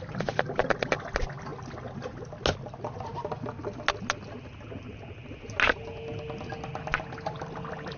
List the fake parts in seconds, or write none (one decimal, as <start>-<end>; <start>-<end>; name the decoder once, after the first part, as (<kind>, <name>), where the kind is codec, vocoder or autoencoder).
none